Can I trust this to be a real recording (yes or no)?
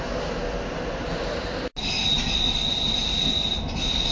yes